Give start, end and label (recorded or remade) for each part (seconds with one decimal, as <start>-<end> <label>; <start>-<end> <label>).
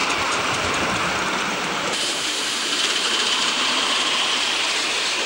0.0-0.7 remade; 0.7-1.5 recorded; 1.5-4.7 remade; 4.7-5.3 recorded